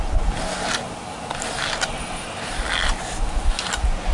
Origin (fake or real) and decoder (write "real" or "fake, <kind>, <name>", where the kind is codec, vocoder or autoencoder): real